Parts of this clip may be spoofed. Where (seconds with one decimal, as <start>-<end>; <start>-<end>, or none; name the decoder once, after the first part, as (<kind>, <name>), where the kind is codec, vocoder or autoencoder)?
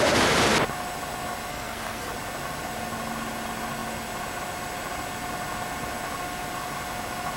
1.5-2.1 (codec, SNAC)